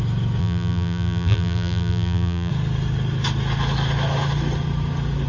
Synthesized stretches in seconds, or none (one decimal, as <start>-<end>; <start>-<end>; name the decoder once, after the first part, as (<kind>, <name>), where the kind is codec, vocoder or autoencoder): 0.4-2.5 (vocoder, BigVGAN v2)